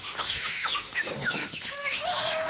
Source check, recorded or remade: remade